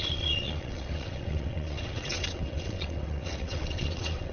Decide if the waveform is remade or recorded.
remade